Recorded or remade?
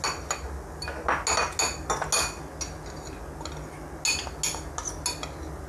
recorded